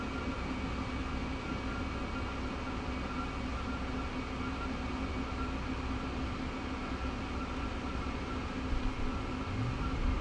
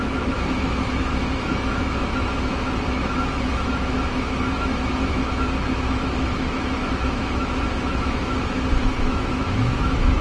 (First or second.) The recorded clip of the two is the first